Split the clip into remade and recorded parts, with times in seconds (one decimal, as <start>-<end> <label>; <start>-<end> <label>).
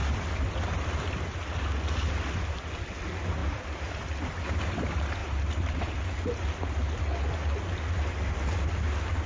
0.0-1.0 remade; 1.0-3.4 recorded; 3.4-4.2 remade; 4.2-5.2 recorded; 5.2-6.5 remade; 6.5-9.3 recorded